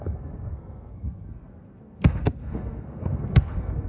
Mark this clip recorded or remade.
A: remade